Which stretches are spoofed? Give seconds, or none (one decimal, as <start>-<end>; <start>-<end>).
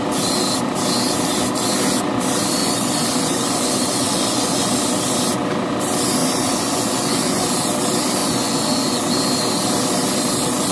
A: 2.6-4.7; 6.2-7.5; 8.2-9.1